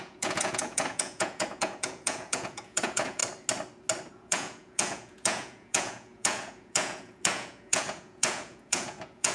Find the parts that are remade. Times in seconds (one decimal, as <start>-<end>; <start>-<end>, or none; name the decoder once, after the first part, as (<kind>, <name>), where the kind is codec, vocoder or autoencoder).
0.0-3.2 (vocoder, Vocos); 4.1-9.3